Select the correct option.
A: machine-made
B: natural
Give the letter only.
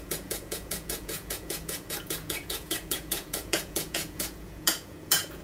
A